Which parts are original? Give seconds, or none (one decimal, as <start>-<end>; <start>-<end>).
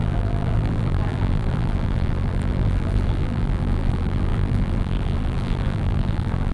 none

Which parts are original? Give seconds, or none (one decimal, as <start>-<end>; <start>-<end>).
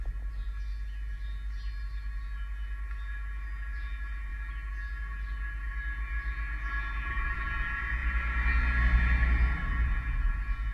0.0-10.7